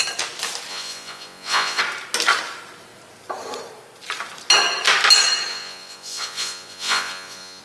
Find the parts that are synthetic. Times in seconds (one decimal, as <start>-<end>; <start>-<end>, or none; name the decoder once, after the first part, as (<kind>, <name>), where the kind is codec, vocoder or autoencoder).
0.7-1.8 (vocoder, Vocos); 5.5-7.6